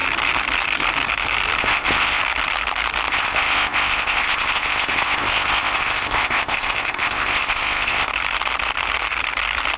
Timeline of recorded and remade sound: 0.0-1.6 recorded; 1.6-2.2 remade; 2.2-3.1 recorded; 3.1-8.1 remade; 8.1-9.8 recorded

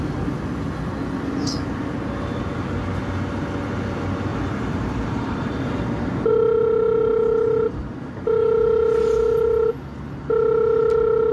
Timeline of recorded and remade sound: 0.0-4.3 recorded; 4.3-6.3 remade; 6.3-11.3 recorded

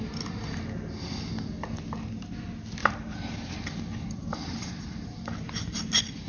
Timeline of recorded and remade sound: 0.0-2.8 recorded; 2.8-3.8 remade; 3.8-4.2 recorded; 4.2-5.3 remade; 5.3-6.3 recorded